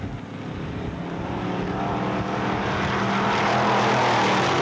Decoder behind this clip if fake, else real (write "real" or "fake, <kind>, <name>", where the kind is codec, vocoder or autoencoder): real